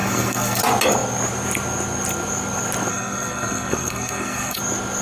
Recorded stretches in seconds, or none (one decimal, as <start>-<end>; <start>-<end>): 0.6-2.9; 4.6-5.0